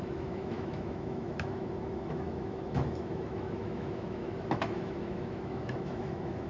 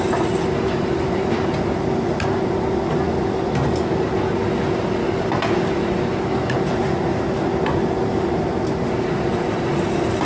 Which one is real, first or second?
second